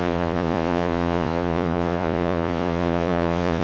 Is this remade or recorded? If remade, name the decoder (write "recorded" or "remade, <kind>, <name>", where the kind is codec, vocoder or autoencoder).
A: remade, vocoder, Vocos